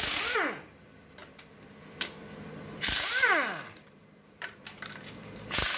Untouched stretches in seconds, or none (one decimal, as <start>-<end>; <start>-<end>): 0.0-3.8; 4.6-5.8